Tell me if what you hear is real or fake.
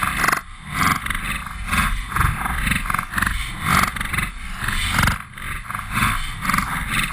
real